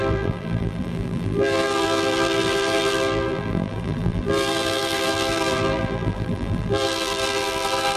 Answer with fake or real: fake